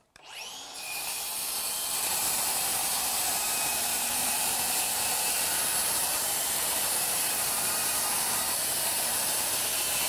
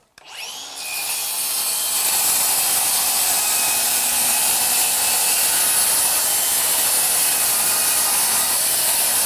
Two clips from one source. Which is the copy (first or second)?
first